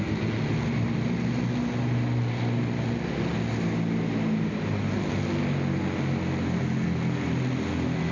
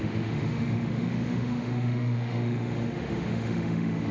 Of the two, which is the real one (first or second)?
first